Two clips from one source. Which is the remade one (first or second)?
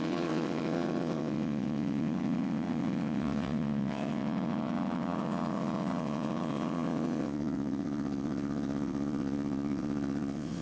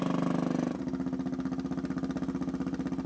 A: first